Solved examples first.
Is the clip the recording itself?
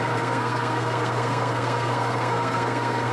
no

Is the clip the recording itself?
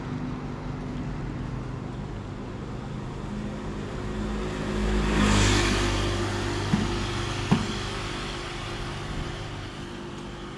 yes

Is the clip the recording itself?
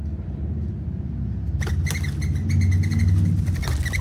yes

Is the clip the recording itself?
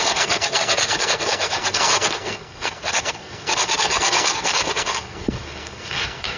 no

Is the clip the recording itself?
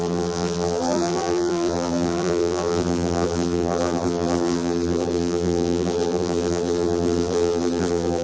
no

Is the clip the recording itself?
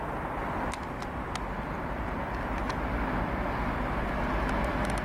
yes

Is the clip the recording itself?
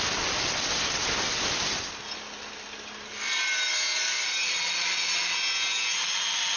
yes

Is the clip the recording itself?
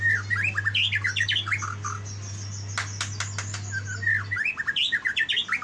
yes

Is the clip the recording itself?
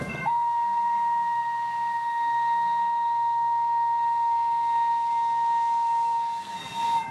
no